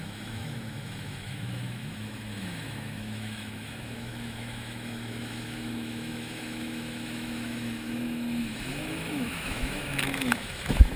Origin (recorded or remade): remade